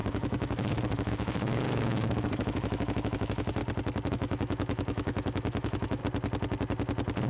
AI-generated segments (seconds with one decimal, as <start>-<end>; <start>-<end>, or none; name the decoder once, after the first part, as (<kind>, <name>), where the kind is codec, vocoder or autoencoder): 0.0-3.6 (autoencoder, DAC-VAE); 4.1-6.0